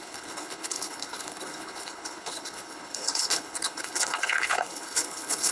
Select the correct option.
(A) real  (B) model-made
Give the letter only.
B